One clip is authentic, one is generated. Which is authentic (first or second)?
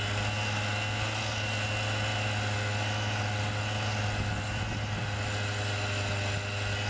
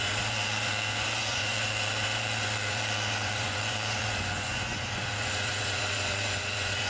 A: first